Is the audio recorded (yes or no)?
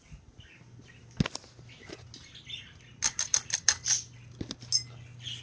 yes